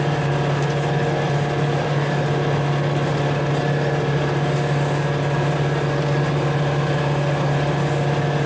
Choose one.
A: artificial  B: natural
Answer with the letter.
B